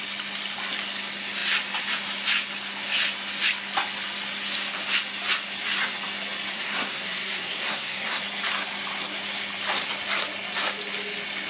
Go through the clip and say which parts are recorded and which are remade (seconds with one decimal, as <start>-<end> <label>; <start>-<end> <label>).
0.0-6.5 recorded; 6.5-8.2 remade; 8.2-11.5 recorded